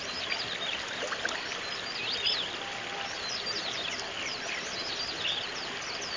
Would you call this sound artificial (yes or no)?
no